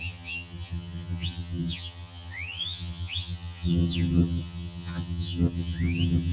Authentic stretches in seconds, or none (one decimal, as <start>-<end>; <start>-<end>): none